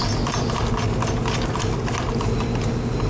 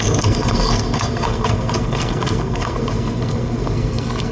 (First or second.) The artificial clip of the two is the second